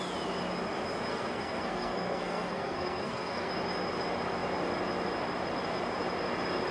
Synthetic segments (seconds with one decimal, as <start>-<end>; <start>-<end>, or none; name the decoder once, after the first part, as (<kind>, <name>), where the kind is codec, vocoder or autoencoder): 1.1-3.5 (codec, SNAC)